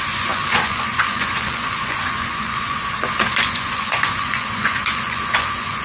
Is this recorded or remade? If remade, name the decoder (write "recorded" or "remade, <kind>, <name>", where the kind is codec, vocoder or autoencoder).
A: remade, vocoder, Vocos